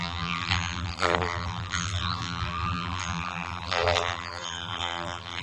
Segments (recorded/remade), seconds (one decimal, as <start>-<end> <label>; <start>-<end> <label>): 0.0-5.4 remade